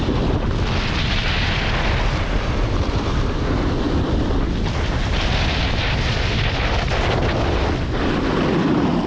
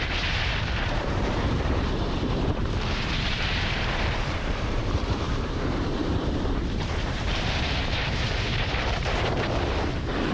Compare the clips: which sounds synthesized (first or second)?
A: second